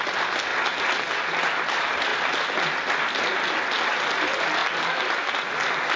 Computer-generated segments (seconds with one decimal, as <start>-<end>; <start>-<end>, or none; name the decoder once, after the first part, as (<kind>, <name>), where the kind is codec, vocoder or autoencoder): none